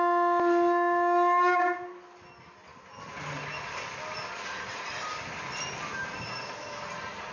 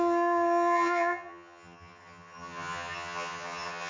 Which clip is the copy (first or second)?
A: second